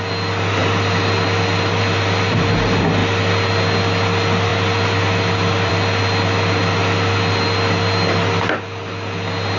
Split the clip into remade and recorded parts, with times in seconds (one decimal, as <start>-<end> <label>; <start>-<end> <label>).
0.0-9.6 recorded